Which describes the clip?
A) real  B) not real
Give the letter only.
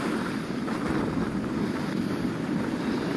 A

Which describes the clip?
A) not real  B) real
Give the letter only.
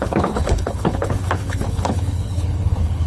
A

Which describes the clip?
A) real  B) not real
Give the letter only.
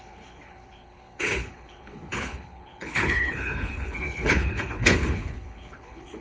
B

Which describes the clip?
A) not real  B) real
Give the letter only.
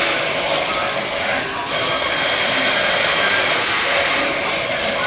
B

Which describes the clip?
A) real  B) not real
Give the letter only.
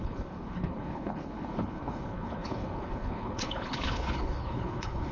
B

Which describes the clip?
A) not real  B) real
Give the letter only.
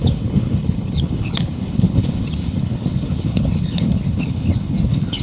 A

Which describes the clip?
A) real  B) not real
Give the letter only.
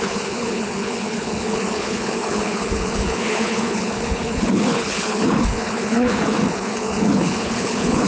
B